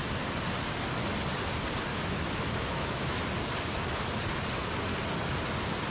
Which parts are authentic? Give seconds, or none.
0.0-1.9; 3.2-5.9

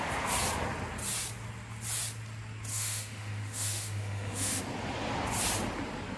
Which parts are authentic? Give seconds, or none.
0.0-2.7; 4.6-6.2

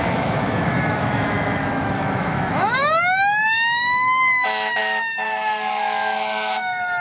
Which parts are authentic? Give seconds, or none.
none

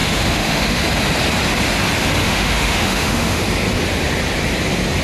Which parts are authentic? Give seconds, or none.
0.8-2.2; 3.4-5.0

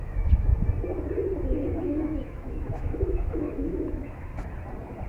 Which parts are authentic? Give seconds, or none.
0.5-1.8; 4.3-5.1

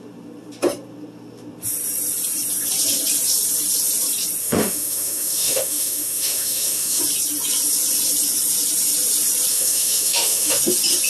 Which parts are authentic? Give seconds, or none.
0.0-4.4; 7.0-9.5; 10.6-11.1

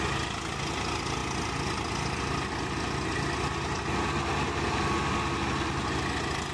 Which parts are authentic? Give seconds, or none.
0.0-6.5

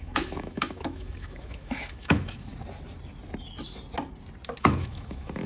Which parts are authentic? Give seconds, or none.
2.5-4.6